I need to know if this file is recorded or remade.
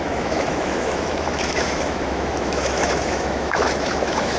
remade